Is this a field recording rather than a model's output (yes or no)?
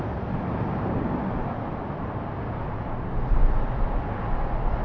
yes